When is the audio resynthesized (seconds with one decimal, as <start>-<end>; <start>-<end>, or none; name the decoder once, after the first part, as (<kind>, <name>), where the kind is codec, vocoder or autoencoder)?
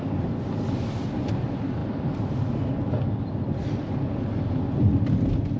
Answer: none